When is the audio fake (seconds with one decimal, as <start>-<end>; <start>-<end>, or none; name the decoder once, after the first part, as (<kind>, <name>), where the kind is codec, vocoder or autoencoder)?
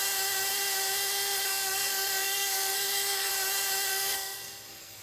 1.5-3.3 (codec, SNAC); 3.9-5.0